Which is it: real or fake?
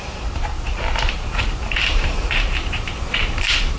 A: fake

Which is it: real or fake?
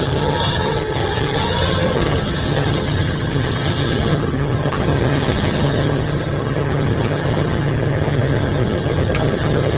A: fake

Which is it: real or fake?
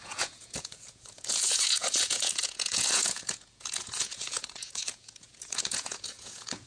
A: fake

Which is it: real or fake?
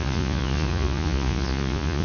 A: fake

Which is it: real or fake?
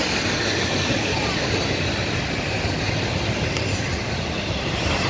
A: real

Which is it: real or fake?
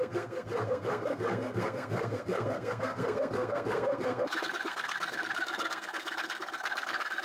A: fake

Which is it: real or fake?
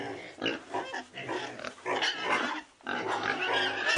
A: real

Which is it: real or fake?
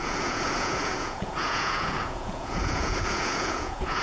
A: fake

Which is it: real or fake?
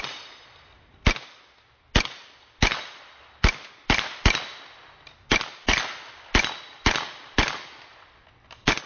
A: real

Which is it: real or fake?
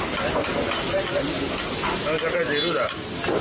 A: real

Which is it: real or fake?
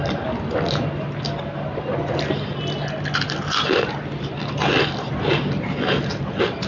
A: real